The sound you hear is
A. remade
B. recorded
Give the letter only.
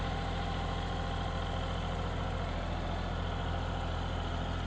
B